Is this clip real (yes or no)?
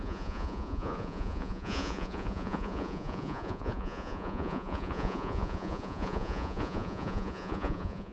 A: no